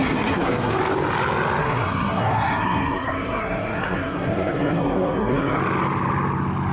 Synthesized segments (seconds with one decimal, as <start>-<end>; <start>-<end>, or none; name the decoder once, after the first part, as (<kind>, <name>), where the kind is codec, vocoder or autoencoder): 0.0-0.7 (codec, SNAC); 1.6-5.6